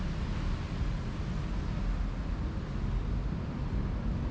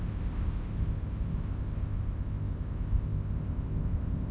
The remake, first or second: second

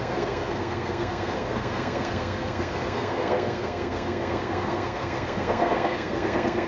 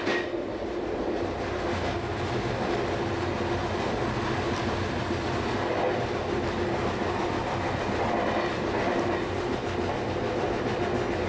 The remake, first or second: first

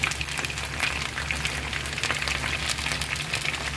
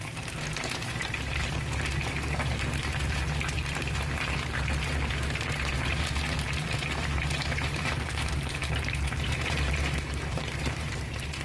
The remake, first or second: second